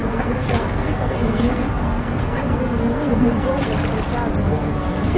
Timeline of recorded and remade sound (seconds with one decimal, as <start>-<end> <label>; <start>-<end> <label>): 0.0-3.7 remade; 3.7-4.3 recorded; 4.3-5.2 remade